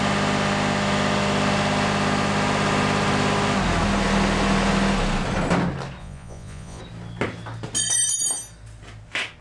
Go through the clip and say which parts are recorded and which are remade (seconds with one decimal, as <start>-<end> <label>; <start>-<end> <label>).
0.0-6.0 recorded; 6.0-6.8 remade; 6.8-9.4 recorded